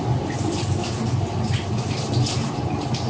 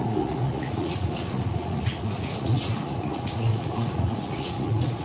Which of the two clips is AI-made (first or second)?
second